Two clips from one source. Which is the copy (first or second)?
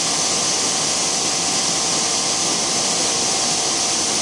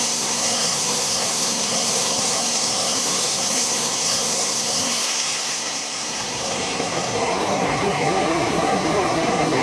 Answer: second